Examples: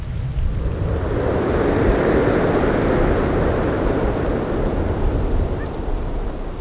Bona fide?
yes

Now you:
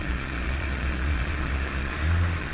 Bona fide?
no